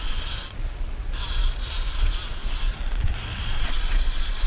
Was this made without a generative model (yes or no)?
no